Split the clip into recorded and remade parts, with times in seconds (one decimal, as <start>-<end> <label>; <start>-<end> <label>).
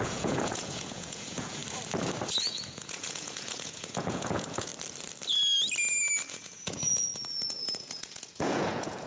0.0-1.6 remade; 1.6-2.4 recorded; 2.4-4.7 remade; 4.7-6.3 recorded; 6.3-9.1 remade